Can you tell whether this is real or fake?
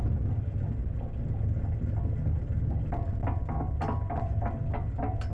real